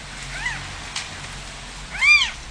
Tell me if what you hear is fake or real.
real